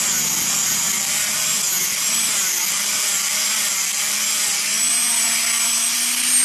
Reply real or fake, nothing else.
real